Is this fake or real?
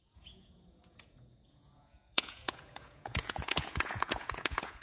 fake